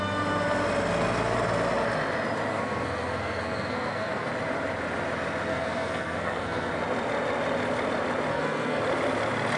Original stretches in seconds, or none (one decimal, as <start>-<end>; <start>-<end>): 0.0-2.5; 4.3-5.5; 6.7-8.3; 8.8-9.6